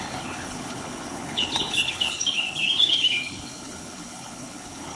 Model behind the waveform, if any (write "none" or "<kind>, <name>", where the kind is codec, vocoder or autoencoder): codec, HILCodec